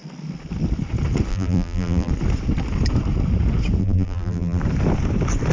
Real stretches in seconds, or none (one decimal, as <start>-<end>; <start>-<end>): 0.0-1.3; 2.1-3.8; 4.6-5.5

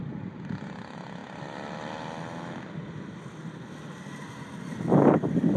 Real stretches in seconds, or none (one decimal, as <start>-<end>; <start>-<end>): 0.0-5.6

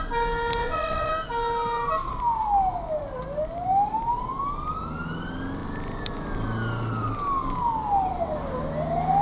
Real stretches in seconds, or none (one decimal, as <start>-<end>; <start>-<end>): 0.0-0.6; 1.1-9.2

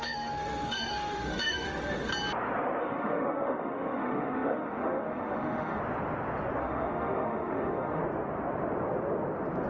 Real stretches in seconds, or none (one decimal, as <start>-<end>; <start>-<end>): 2.1-2.8; 5.8-6.6; 8.0-9.7

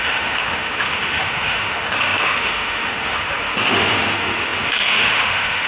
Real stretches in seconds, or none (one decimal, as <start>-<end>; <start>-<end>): none

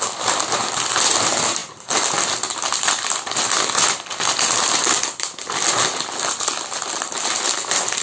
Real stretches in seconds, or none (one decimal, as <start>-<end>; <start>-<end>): 0.0-8.0